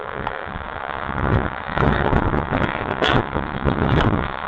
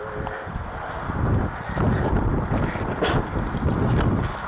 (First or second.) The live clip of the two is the second